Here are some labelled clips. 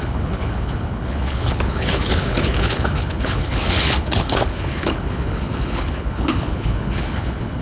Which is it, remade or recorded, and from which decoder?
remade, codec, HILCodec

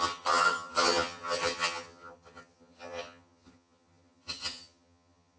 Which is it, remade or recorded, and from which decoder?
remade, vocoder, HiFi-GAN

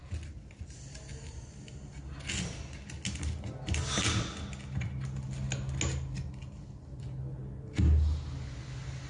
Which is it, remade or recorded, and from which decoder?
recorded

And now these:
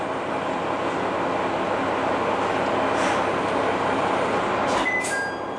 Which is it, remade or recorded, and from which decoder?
recorded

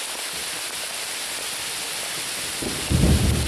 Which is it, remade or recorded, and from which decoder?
recorded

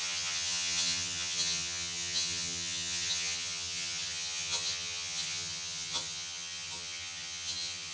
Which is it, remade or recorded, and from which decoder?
remade, vocoder, HiFi-GAN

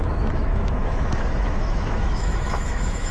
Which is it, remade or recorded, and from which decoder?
remade, autoencoder, DAC-VAE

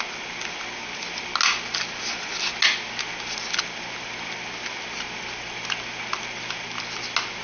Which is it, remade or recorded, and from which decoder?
recorded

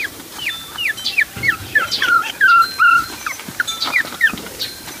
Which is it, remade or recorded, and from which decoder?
recorded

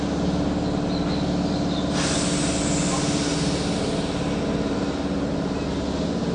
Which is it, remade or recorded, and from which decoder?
recorded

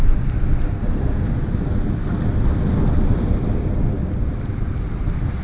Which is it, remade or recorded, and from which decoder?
recorded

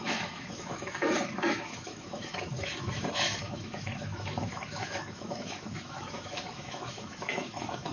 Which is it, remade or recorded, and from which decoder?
remade, autoencoder, DAC-VAE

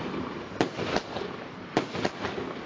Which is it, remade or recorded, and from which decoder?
recorded